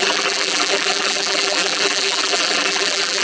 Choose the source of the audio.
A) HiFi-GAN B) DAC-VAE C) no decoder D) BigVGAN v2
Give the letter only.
D